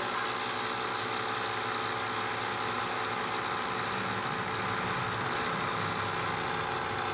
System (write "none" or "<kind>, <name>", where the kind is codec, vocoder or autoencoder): none